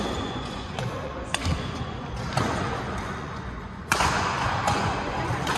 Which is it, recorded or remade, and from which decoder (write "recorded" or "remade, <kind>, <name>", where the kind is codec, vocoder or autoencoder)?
remade, vocoder, Vocos